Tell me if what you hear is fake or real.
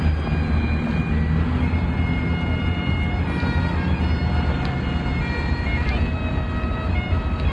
real